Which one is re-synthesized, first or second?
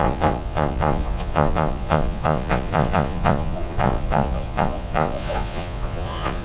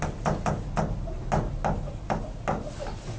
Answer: first